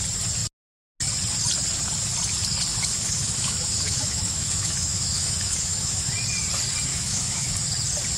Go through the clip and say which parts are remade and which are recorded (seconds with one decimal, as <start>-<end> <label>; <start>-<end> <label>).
0.0-2.7 recorded; 2.7-6.1 remade; 6.1-6.9 recorded; 6.9-7.5 remade; 7.5-8.2 recorded

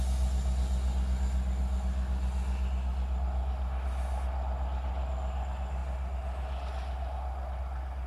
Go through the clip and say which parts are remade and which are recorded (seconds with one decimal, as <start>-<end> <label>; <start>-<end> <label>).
0.0-8.1 recorded

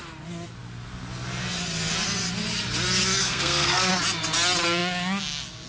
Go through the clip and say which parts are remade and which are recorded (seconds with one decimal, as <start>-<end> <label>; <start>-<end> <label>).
0.0-3.2 recorded; 3.2-3.9 remade; 3.9-5.7 recorded